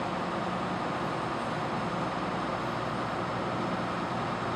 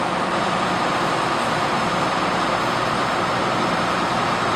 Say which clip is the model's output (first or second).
second